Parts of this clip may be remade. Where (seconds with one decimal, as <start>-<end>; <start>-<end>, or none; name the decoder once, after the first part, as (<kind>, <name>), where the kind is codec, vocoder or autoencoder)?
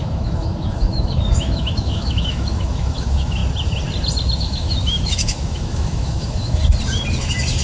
0.0-3.4 (autoencoder, DAC-VAE); 4.4-6.6